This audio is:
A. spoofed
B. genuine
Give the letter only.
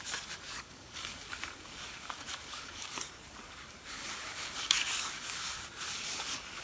A